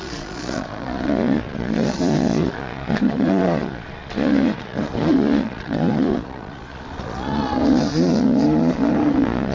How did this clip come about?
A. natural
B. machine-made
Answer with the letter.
B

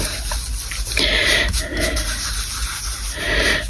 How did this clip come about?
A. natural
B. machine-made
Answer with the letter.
A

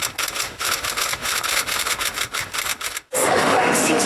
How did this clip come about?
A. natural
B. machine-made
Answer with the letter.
B